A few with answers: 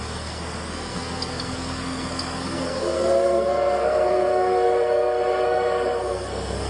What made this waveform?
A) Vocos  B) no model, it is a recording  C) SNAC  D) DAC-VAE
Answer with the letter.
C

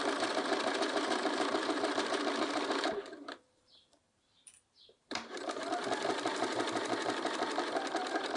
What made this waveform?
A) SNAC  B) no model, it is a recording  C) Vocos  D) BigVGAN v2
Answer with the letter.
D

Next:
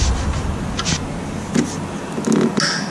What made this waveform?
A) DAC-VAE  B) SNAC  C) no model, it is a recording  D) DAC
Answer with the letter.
C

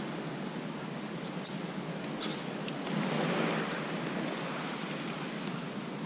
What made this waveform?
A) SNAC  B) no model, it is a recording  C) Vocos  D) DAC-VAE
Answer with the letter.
B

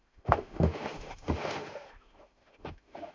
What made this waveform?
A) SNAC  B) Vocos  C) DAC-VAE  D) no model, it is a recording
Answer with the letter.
C